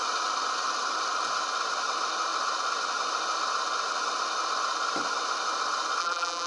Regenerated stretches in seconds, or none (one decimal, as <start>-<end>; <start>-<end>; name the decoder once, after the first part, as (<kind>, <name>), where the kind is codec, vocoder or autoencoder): 6.0-6.5 (vocoder, BigVGAN v2)